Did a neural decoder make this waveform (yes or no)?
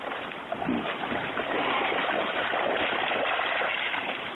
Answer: no